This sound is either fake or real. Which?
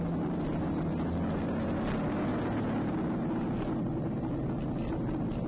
real